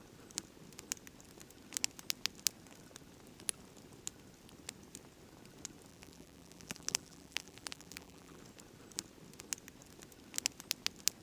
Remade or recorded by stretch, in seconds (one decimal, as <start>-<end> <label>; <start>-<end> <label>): 0.0-5.9 recorded; 5.9-8.4 remade; 8.4-11.2 recorded